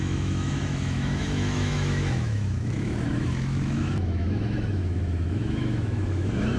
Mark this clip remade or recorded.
remade